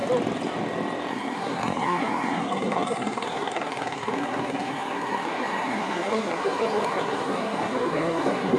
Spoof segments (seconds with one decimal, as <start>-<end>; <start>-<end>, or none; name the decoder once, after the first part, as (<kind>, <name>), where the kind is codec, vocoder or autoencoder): 1.1-8.6 (codec, SNAC)